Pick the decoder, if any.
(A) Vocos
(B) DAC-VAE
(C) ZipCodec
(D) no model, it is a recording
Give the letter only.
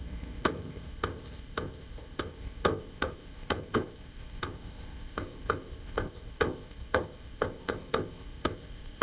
C